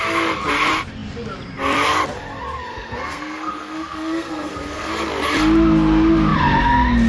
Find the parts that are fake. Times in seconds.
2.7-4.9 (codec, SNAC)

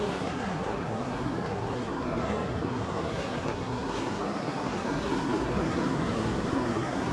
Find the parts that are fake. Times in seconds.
0.0-7.1 (codec, SNAC)